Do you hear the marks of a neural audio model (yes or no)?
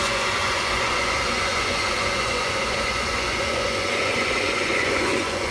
yes